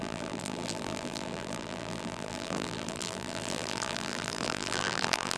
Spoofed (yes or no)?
yes